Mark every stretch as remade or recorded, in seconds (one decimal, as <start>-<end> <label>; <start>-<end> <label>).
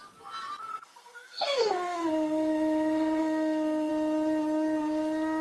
0.0-0.7 recorded; 0.7-3.9 remade; 3.9-5.4 recorded